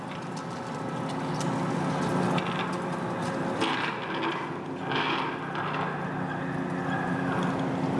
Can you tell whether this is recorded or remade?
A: recorded